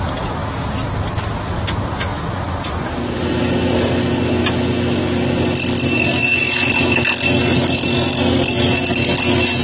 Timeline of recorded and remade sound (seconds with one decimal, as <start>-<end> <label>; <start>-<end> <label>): 0.0-0.4 recorded; 0.4-1.1 remade; 1.1-9.6 recorded